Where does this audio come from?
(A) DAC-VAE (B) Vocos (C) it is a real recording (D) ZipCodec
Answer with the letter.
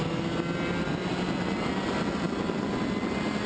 C